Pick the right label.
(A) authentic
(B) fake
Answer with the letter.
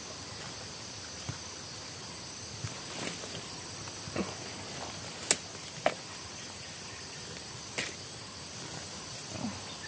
A